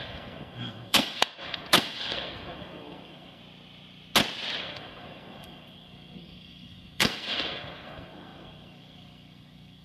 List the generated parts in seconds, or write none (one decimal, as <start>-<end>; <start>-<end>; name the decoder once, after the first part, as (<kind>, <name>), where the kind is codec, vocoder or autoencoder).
0.0-3.4 (codec, SNAC); 4.6-9.8